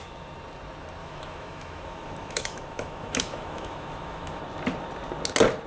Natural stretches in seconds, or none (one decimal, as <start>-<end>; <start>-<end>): 0.0-1.0; 4.4-5.7